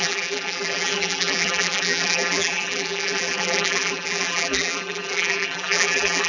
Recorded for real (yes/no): no